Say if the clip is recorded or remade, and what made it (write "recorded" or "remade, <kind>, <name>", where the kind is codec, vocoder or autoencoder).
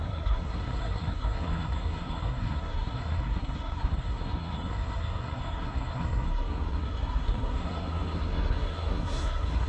remade, codec, SNAC